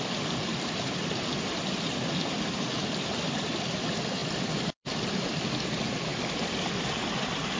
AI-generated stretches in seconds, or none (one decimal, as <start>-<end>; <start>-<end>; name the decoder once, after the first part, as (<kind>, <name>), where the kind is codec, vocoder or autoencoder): 0.4-1.0 (vocoder, BigVGAN v2); 4.2-5.0; 6.1-7.0